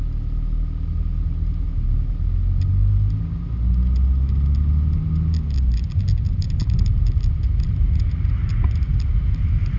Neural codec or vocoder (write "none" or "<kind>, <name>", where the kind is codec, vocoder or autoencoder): none